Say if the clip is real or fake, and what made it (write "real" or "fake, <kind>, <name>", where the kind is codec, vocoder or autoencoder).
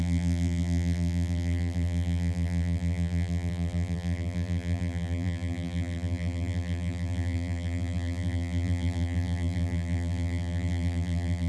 fake, vocoder, BigVGAN v2